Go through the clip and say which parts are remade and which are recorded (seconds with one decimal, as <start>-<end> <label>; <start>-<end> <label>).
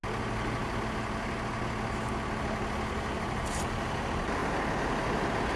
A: 0.0-5.6 recorded